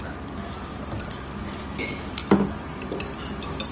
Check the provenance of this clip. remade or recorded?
recorded